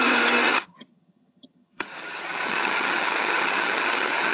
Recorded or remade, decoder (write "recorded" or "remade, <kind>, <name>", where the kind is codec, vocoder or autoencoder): remade, vocoder, HiFi-GAN